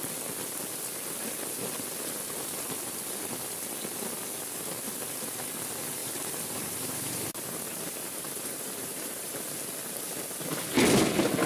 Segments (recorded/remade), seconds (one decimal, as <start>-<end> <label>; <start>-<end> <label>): 0.0-6.0 recorded; 6.0-9.4 remade; 9.4-11.5 recorded